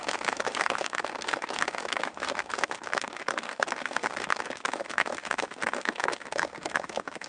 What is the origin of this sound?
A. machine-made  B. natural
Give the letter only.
A